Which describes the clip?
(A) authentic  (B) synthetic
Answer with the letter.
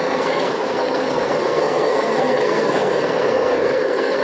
B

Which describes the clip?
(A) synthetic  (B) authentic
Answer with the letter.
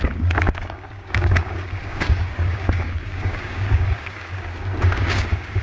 A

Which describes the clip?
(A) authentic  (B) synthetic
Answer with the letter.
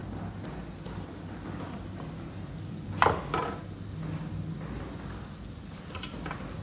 A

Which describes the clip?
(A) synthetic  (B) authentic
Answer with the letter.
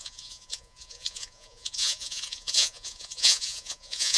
A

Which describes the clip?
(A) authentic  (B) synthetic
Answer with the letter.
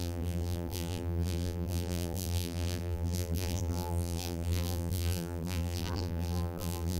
B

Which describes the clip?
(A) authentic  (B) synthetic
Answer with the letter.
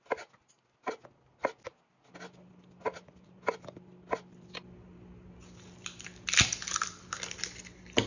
A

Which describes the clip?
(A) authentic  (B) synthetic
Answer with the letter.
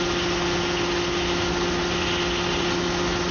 A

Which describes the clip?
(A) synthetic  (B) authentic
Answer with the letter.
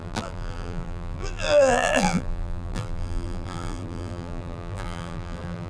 A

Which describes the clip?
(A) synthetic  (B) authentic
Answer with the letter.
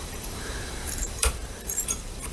A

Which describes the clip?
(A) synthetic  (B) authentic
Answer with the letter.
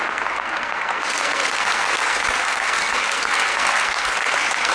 A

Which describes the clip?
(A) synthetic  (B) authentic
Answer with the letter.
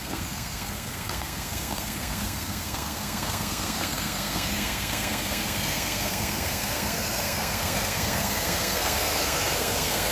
A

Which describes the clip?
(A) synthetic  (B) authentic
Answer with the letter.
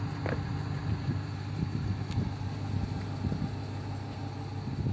B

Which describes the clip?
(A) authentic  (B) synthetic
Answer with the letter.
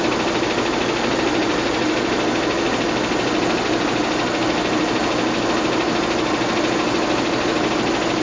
A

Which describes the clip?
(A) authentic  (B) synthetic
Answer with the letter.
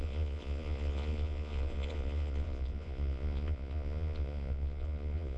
B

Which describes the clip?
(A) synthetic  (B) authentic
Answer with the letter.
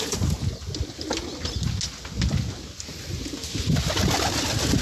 B